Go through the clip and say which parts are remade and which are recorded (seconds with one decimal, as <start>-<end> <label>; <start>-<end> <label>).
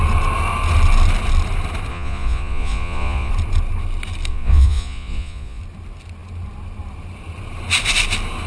0.0-1.9 recorded; 1.9-3.3 remade; 3.3-4.3 recorded; 4.3-5.6 remade; 5.6-8.5 recorded